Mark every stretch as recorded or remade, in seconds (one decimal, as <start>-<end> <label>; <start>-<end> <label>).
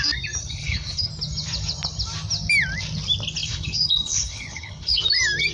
0.0-0.4 recorded; 0.4-1.1 remade; 1.1-3.4 recorded; 3.4-5.0 remade; 5.0-5.5 recorded